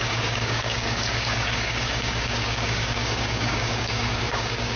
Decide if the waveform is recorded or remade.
remade